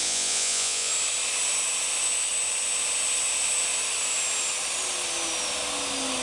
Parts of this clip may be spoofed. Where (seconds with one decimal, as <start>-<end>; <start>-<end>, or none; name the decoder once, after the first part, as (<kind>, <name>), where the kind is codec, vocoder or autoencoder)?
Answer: 0.0-0.9 (vocoder, Vocos)